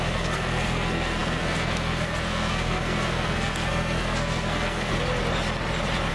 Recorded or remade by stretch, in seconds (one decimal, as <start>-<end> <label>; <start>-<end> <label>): 0.0-4.9 remade; 4.9-6.1 recorded